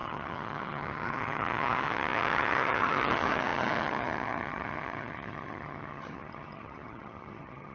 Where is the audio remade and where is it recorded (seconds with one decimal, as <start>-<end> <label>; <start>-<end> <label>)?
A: 0.0-7.7 remade